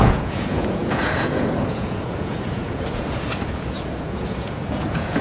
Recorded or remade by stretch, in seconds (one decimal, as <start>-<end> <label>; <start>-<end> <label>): 0.0-5.2 remade